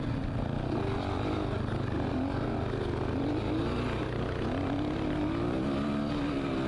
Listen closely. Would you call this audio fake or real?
real